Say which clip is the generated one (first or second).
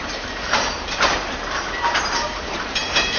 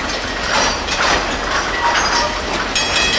first